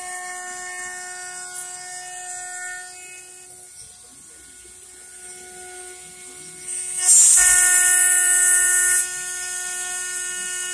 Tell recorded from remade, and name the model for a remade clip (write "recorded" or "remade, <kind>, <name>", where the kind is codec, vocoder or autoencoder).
recorded